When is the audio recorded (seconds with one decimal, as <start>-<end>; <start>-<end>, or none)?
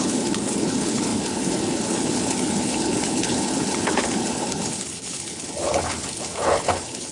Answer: none